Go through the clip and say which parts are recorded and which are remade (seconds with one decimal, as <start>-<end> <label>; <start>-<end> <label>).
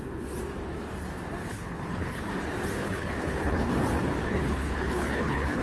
0.0-1.5 recorded; 1.5-2.3 remade; 2.3-2.8 recorded; 2.8-3.7 remade; 3.7-4.2 recorded; 4.2-5.6 remade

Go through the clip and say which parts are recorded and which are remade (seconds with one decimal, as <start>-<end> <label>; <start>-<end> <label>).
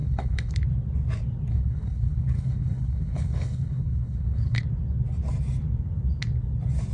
0.0-0.5 remade; 0.5-1.5 recorded; 1.5-4.6 remade; 4.6-6.9 recorded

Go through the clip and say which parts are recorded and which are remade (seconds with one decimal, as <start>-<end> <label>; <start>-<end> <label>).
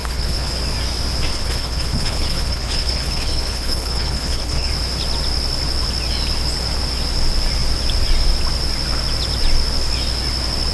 0.0-0.5 remade; 0.5-1.3 recorded; 1.3-4.7 remade; 4.7-10.7 recorded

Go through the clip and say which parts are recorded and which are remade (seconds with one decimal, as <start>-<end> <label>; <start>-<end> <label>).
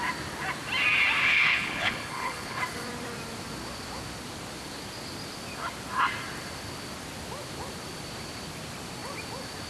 0.0-1.2 recorded; 1.2-2.6 remade; 2.6-9.7 recorded